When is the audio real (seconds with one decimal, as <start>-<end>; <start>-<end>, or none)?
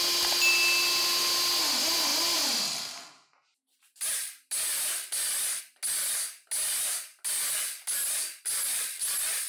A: 0.0-9.5